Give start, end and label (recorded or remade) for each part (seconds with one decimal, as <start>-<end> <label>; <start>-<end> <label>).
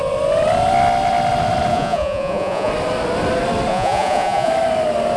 0.0-1.7 recorded; 1.7-2.7 remade; 2.7-3.7 recorded; 3.7-4.5 remade; 4.5-5.2 recorded